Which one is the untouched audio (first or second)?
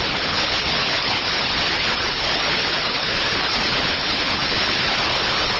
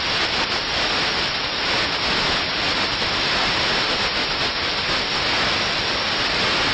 second